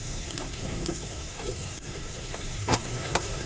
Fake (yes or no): yes